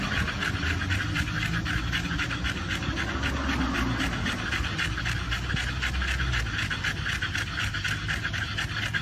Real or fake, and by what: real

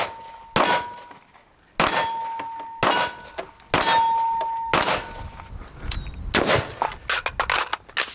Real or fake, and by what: real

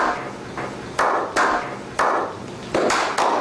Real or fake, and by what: real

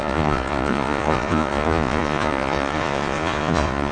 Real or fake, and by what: fake, vocoder, Vocos